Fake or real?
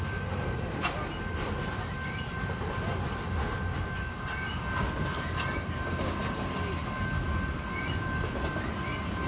real